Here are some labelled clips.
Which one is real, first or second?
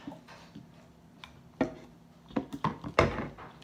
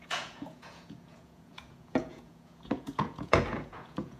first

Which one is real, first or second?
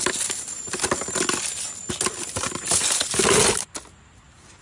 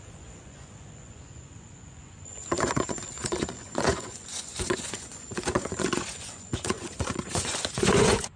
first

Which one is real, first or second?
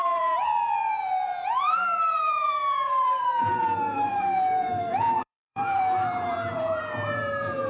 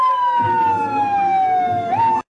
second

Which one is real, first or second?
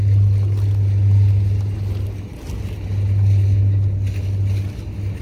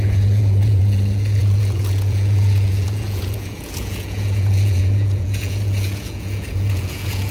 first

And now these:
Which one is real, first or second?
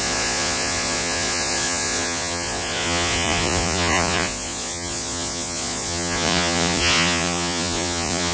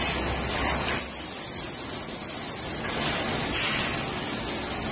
second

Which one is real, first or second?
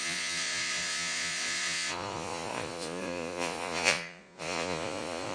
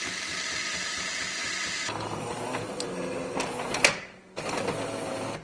second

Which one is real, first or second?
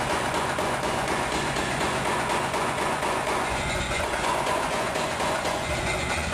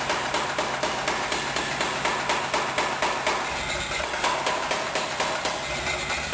second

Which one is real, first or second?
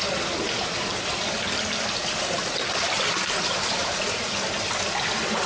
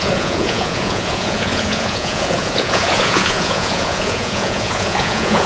first